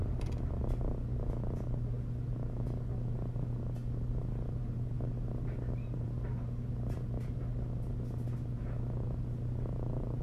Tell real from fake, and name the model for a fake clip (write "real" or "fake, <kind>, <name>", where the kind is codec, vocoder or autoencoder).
real